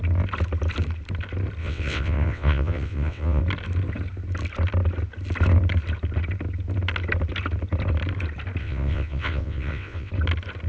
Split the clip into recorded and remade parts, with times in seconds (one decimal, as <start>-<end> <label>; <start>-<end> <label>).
0.0-1.6 recorded; 1.6-3.4 remade; 3.4-8.6 recorded; 8.6-10.1 remade; 10.1-10.7 recorded

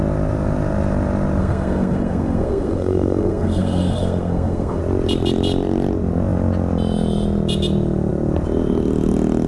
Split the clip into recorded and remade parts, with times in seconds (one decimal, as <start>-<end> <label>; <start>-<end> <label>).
0.0-1.4 recorded; 1.4-4.8 remade; 4.8-9.5 recorded

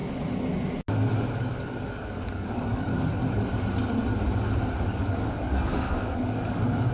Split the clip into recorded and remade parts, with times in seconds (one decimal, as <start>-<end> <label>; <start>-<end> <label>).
0.0-1.3 recorded; 1.3-2.9 remade; 2.9-4.8 recorded; 4.8-6.9 remade

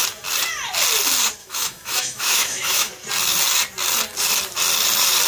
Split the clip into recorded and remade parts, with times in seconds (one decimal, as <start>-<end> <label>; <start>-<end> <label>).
0.0-1.4 recorded; 1.4-2.9 remade; 2.9-5.3 recorded

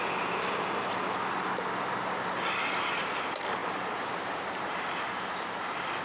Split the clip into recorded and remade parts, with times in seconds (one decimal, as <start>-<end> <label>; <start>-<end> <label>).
0.0-3.6 recorded; 3.6-4.6 remade; 4.6-6.0 recorded